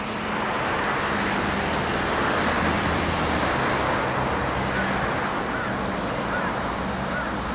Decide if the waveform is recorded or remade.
recorded